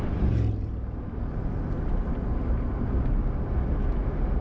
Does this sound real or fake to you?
real